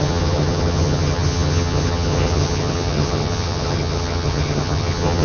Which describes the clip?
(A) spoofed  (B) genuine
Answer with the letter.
A